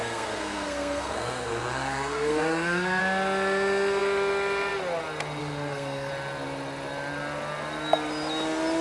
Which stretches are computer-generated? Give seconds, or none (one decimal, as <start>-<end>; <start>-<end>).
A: 0.0-3.0; 5.4-6.1